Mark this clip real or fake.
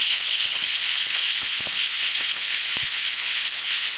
fake